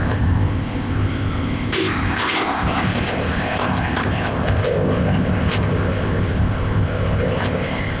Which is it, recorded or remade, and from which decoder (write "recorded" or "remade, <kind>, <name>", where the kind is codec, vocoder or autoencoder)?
remade, codec, ZipCodec